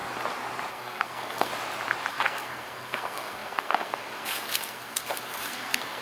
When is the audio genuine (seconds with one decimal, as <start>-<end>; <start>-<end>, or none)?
0.0-0.7; 1.5-2.1